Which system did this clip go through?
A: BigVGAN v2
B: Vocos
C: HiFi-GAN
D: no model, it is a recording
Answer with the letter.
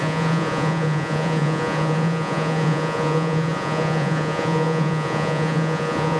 B